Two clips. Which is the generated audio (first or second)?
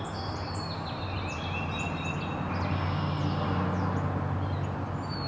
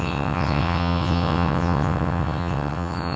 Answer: second